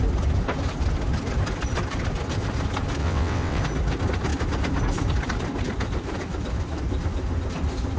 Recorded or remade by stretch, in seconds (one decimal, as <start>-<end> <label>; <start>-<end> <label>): 0.0-3.0 recorded; 3.0-3.6 remade; 3.6-8.0 recorded